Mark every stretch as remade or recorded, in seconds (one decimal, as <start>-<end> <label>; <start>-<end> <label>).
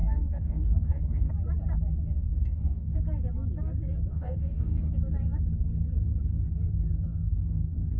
0.0-1.3 remade; 1.3-2.2 recorded; 2.2-2.9 remade; 2.9-4.1 recorded; 4.1-4.8 remade; 4.8-7.1 recorded; 7.1-8.0 remade